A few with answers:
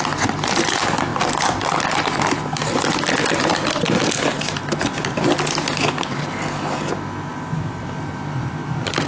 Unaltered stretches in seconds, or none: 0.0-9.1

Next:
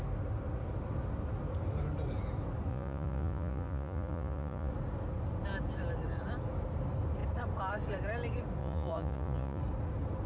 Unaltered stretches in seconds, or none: 0.0-2.7; 4.7-8.6; 9.6-10.3

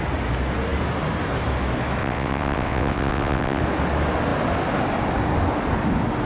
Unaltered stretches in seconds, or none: 0.0-2.0; 3.6-6.3

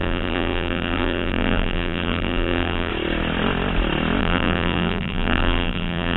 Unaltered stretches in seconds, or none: 2.9-4.2

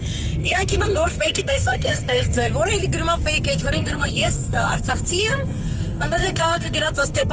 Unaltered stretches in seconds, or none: 0.0-0.4; 2.5-3.5